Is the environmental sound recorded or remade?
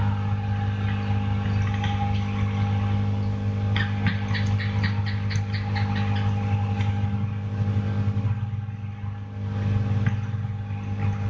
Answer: recorded